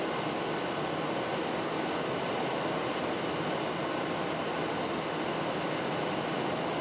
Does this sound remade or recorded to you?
recorded